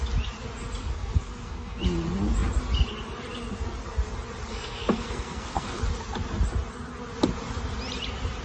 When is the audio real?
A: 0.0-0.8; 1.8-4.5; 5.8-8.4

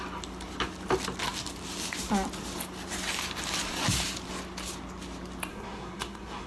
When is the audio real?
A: 0.0-5.5